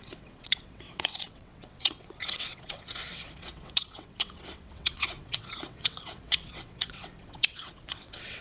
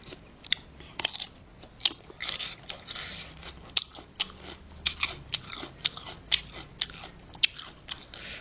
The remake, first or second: first